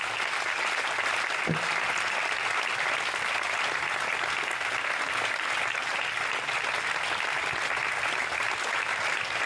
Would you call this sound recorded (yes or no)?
yes